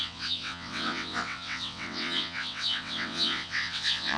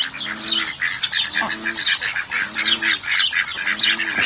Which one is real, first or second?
second